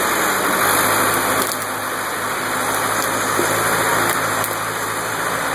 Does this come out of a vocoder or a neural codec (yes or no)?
no